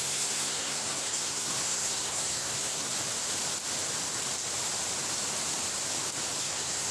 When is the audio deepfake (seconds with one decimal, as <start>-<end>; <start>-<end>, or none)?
0.0-2.9; 6.4-6.9